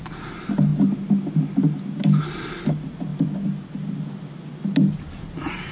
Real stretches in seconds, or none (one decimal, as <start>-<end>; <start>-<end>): 0.0-5.7